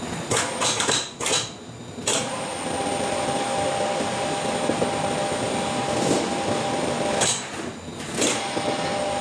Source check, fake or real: real